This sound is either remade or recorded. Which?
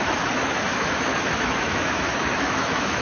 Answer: remade